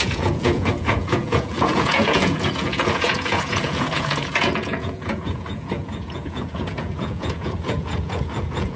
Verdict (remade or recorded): remade